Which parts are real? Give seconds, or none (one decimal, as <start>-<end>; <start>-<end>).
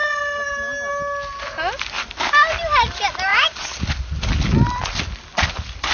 0.0-5.9